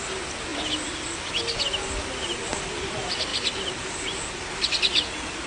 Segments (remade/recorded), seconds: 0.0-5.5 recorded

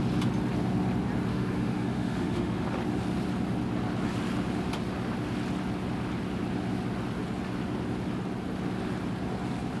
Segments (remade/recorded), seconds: 0.0-1.3 recorded; 1.3-2.6 remade; 2.6-9.8 recorded

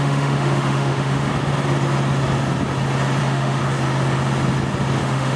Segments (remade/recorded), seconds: 0.0-1.3 remade; 1.3-3.2 recorded; 3.2-3.6 remade; 3.6-5.0 recorded; 5.0-5.4 remade

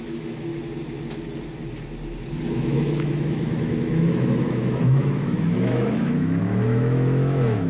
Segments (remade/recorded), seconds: 0.0-0.5 remade; 0.5-2.5 recorded; 2.5-7.7 remade

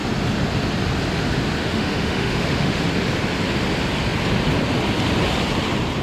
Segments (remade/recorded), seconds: 0.0-1.6 recorded; 1.6-2.8 remade; 2.8-6.0 recorded